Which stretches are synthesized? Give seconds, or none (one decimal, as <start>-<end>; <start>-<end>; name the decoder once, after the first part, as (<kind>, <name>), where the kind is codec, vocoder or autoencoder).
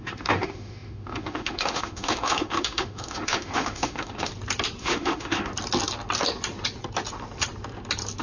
0.0-4.3 (autoencoder, DAC-VAE); 4.8-5.5